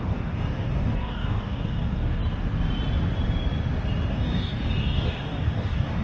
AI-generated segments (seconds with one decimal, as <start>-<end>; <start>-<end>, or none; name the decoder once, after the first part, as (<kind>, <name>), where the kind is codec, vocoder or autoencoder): 0.0-2.2 (codec, DAC); 4.1-6.0